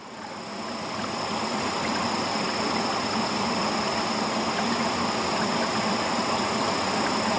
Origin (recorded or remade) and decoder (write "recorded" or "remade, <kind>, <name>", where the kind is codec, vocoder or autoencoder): recorded